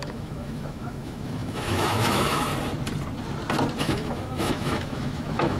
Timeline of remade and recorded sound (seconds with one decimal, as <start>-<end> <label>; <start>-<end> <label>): 0.0-2.5 remade; 2.5-3.8 recorded; 3.8-5.6 remade